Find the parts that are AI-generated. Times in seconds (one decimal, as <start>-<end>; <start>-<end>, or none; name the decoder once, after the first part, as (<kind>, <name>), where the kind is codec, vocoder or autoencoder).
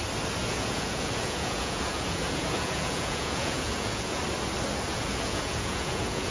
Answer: 0.4-4.2 (vocoder, Vocos); 4.9-6.3